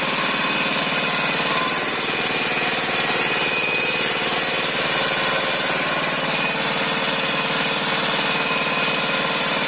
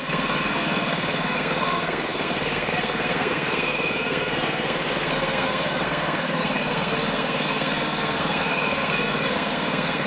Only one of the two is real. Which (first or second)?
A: first